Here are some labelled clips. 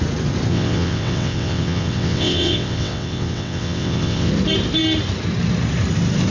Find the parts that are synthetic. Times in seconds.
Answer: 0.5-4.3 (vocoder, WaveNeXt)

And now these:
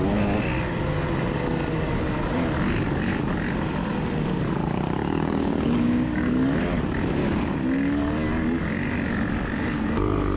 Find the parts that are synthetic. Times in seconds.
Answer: 5.0-6.3 (codec, DAC)

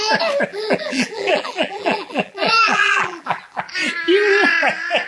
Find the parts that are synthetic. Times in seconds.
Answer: 0.5-3.6 (vocoder, BigVGAN v2)

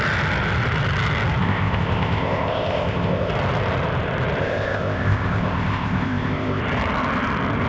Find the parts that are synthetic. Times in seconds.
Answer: 1.4-3.3 (codec, ZipCodec); 4.4-6.6

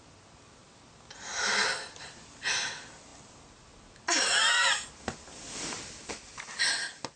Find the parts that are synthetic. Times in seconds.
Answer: none

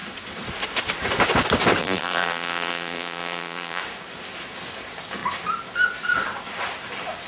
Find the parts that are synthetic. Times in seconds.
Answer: 1.8-3.8 (vocoder, BigVGAN v2)

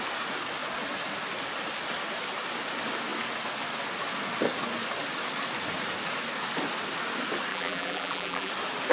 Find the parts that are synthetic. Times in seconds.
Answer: 7.5-8.5 (vocoder, BigVGAN v2)